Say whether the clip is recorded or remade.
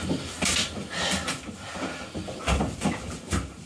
recorded